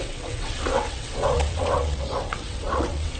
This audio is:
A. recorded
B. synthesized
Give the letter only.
B